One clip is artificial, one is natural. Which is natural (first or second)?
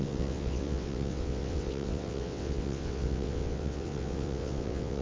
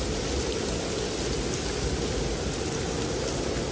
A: second